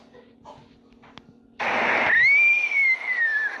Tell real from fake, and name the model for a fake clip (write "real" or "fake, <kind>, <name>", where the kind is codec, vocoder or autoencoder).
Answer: real